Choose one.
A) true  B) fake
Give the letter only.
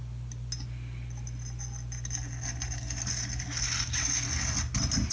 A